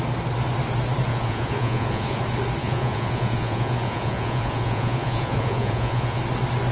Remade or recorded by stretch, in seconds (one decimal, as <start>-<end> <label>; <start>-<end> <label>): 0.0-1.1 recorded; 1.1-2.2 remade; 2.2-2.6 recorded; 2.6-6.2 remade; 6.2-6.7 recorded